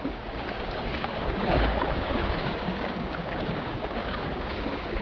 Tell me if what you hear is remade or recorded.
remade